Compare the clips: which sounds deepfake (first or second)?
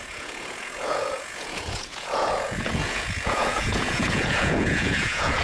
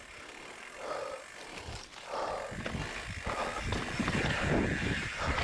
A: first